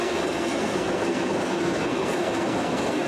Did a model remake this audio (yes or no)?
yes